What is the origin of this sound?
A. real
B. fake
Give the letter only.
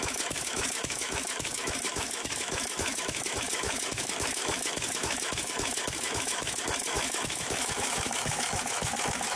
B